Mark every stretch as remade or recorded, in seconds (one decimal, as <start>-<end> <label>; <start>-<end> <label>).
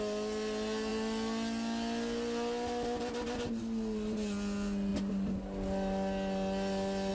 0.0-7.1 recorded